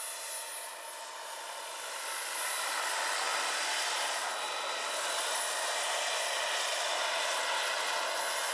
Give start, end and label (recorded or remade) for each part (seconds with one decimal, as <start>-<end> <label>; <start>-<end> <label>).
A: 0.0-3.3 recorded; 3.3-7.4 remade; 7.4-8.5 recorded